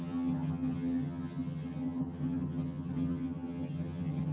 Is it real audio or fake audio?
fake